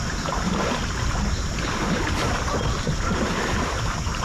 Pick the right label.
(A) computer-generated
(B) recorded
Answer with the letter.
B